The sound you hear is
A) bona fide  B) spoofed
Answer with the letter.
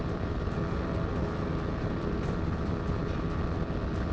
A